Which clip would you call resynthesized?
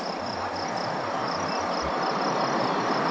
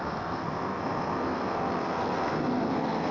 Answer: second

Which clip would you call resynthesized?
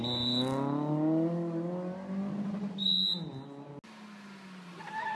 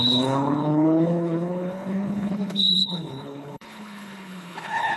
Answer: second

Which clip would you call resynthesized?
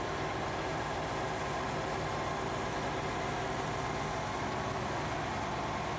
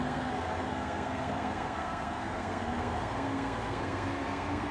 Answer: second